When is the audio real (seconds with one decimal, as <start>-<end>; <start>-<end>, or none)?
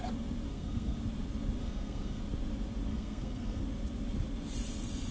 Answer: 0.0-0.5; 1.0-1.6; 2.2-2.9; 3.6-5.1